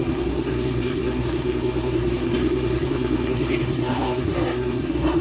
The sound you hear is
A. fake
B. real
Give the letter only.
A